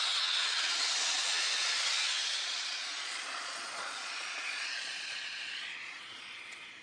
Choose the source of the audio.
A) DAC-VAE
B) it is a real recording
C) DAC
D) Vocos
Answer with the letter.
D